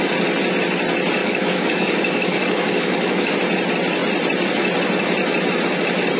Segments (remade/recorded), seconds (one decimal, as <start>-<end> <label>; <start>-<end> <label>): 0.0-1.2 recorded; 1.2-3.3 remade; 3.3-6.2 recorded